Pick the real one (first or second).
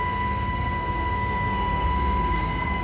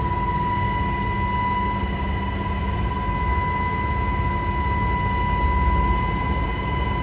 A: second